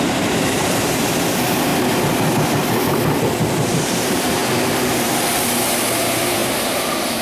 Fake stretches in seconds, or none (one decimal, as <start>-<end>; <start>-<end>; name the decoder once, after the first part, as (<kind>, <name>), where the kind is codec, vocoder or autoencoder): 0.0-1.7 (vocoder, BigVGAN v2); 3.6-4.4; 6.0-7.2